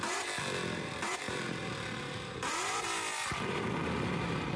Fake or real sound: real